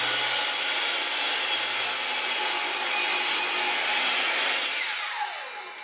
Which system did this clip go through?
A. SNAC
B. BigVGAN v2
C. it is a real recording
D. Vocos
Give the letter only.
C